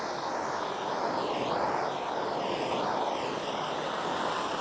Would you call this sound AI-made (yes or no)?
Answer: no